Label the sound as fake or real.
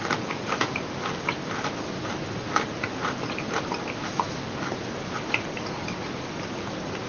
real